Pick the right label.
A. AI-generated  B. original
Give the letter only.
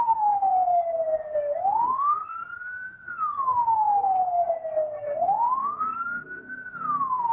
B